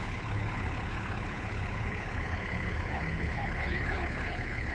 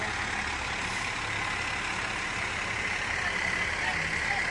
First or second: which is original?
second